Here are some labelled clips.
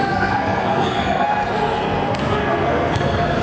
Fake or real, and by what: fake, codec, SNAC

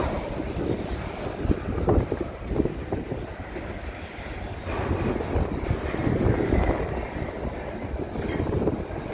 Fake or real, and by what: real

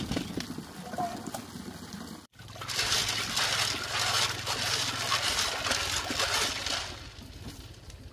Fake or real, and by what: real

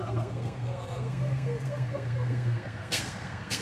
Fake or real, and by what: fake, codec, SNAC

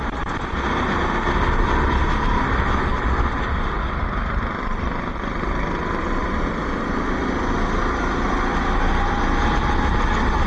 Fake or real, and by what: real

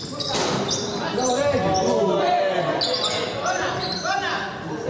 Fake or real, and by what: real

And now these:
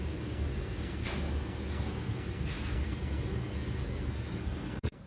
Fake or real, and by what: fake, codec, SNAC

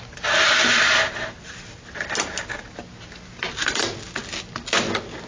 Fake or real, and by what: real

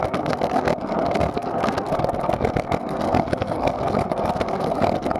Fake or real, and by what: fake, codec, SNAC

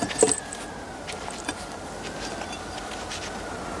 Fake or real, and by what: real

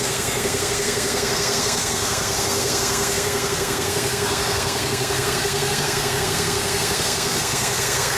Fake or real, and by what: fake, codec, SNAC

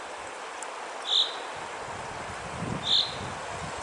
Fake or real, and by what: real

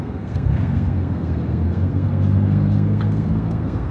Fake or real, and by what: fake, codec, SNAC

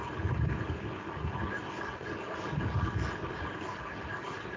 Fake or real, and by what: real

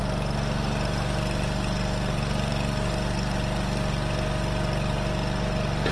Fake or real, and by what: real